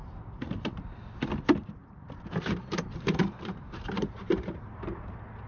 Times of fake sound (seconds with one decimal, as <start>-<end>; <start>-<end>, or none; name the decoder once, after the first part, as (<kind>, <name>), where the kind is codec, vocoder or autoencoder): 0.0-1.1 (vocoder, BigVGAN v2); 1.8-5.1